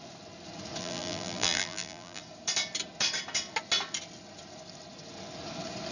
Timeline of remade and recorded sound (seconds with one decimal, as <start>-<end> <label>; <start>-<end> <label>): 0.0-0.8 recorded; 0.8-2.2 remade; 2.2-5.9 recorded

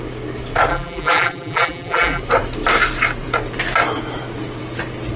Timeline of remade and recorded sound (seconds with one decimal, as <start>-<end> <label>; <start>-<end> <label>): 0.0-0.7 recorded; 0.7-2.2 remade; 2.2-5.2 recorded